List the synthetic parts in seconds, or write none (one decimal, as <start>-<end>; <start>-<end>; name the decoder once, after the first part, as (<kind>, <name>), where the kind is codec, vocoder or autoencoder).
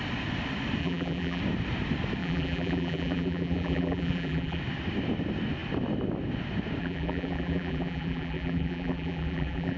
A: 0.8-1.4 (vocoder, BigVGAN v2); 2.2-4.6; 6.8-9.8